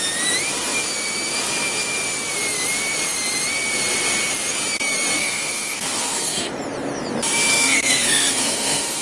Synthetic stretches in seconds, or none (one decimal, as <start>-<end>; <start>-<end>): 5.2-6.5; 7.5-9.0